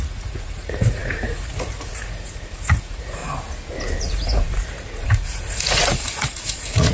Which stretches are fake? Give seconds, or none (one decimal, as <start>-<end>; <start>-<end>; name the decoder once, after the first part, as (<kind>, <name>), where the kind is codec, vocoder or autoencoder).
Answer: 0.0-3.2 (vocoder, Vocos); 4.0-6.9